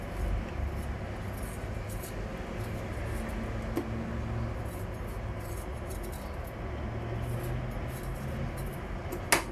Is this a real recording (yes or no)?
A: yes